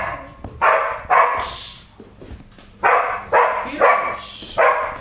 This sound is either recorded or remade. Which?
recorded